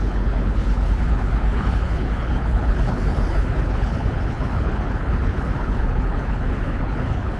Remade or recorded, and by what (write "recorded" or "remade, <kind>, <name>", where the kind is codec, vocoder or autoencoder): remade, codec, HILCodec